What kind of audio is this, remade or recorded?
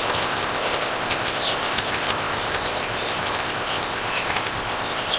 remade